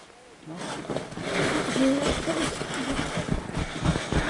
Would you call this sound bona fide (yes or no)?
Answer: yes